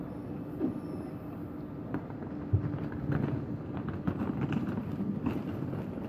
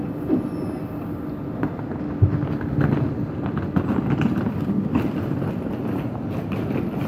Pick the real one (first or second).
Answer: second